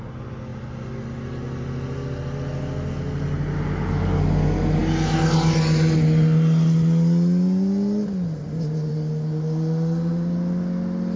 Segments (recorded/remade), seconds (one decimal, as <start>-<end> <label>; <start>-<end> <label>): 0.0-11.2 recorded